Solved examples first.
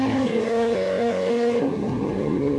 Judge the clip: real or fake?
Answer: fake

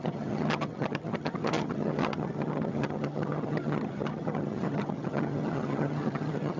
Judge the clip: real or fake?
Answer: fake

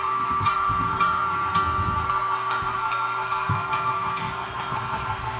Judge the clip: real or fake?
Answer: fake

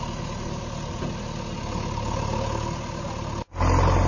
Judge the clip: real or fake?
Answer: real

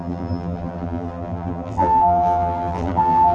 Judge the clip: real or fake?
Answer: fake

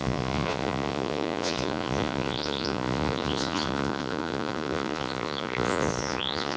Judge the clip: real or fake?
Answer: fake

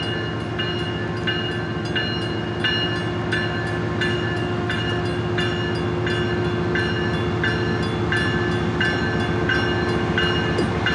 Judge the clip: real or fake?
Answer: real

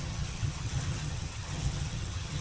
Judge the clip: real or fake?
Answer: fake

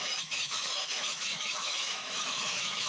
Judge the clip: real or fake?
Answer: fake